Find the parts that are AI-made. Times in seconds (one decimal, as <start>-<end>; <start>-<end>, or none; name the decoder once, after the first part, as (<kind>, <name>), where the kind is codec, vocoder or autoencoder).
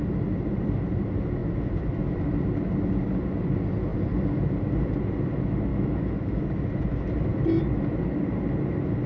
5.7-6.4 (autoencoder, DAC-VAE)